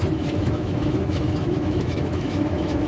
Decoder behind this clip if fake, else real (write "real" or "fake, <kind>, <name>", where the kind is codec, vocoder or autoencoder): fake, autoencoder, DAC-VAE